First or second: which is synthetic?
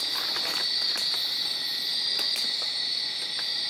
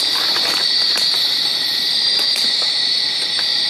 second